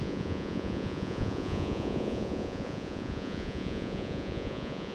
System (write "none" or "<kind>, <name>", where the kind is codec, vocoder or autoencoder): vocoder, Vocos